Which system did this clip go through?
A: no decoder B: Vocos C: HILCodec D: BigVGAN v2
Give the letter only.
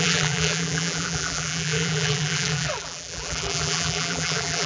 D